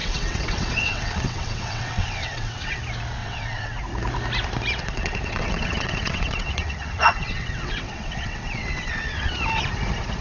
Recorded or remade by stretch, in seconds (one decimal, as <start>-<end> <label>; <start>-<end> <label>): 0.0-2.8 remade; 2.8-3.2 recorded; 3.2-3.8 remade; 3.8-4.8 recorded; 4.8-9.6 remade; 9.6-10.2 recorded